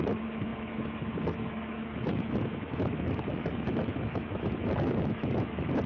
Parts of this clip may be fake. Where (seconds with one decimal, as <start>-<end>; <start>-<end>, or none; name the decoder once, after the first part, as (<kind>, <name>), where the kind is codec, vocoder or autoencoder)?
0.0-5.9 (autoencoder, DAC-VAE)